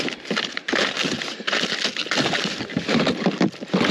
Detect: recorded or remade recorded